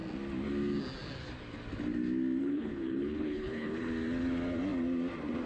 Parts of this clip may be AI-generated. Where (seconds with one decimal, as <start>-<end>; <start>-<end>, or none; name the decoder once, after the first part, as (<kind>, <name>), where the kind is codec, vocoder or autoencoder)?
2.4-3.9 (codec, HILCodec)